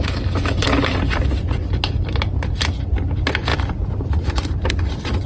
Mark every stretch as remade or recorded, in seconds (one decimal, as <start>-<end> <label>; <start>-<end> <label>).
0.0-3.5 recorded; 3.5-4.7 remade; 4.7-5.3 recorded